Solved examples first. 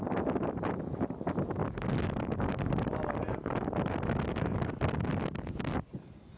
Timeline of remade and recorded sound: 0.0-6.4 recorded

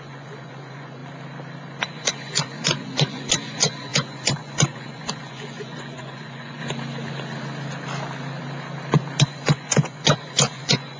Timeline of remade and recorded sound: 0.0-1.0 remade; 1.0-1.9 recorded; 1.9-6.6 remade; 6.6-9.2 recorded; 9.2-11.0 remade

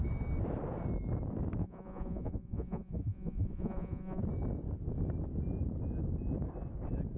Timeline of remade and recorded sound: 0.0-1.6 recorded; 1.6-4.2 remade; 4.2-7.2 recorded

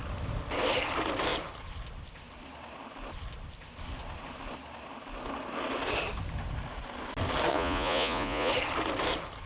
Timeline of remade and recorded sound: 0.0-7.5 recorded; 7.5-8.5 remade; 8.5-9.5 recorded